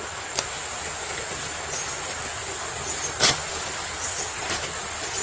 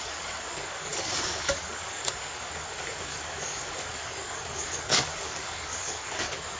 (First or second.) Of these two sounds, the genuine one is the first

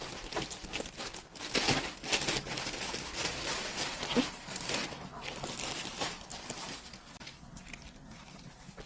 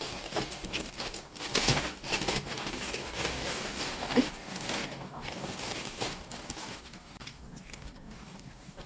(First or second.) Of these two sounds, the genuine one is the first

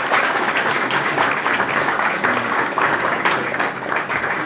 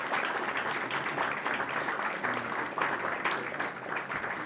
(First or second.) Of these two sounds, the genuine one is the second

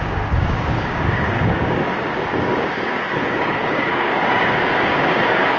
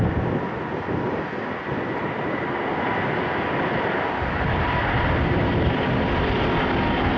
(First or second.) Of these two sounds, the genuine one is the second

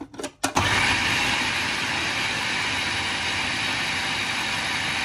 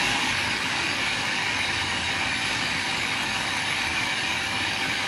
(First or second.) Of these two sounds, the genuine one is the first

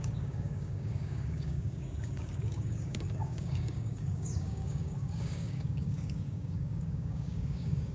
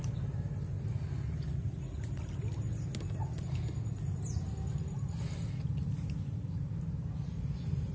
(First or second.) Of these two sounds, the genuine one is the second